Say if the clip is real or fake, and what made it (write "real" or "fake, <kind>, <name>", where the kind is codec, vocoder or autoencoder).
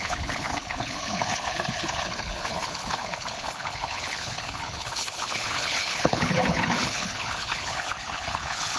fake, codec, HILCodec